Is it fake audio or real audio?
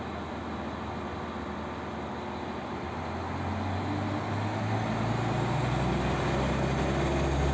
real